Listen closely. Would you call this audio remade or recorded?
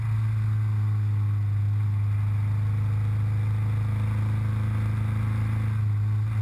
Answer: recorded